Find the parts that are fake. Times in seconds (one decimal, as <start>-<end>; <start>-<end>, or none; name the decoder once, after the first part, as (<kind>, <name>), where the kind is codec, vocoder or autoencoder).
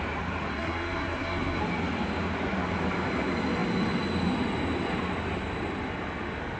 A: 0.5-1.6 (codec, SNAC)